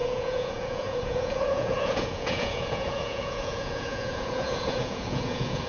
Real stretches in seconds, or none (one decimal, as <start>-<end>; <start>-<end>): none